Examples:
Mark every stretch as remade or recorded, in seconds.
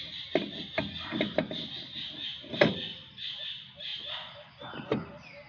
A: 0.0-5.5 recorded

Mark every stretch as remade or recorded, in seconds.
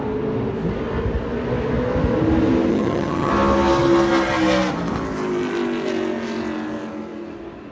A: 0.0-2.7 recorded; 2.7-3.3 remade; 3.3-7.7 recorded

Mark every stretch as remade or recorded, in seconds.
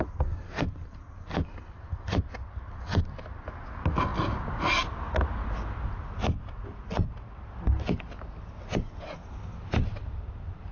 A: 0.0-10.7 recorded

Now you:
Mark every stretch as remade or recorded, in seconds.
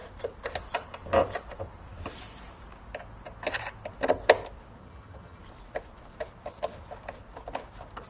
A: 0.0-4.8 recorded; 4.8-5.4 remade; 5.4-8.1 recorded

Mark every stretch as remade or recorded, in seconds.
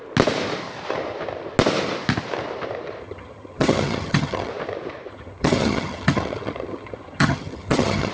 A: 0.0-3.0 recorded; 3.0-4.5 remade; 4.5-5.1 recorded; 5.1-8.1 remade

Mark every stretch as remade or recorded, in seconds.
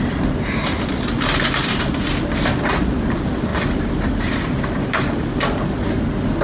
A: 0.0-6.4 recorded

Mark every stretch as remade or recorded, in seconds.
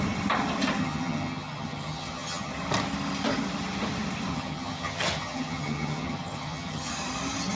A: 0.0-0.8 recorded; 0.8-2.5 remade; 2.5-4.3 recorded; 4.3-6.9 remade; 6.9-7.5 recorded